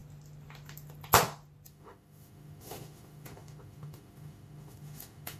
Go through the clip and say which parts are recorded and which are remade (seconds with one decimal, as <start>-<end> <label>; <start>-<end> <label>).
0.0-1.7 recorded; 1.7-5.4 remade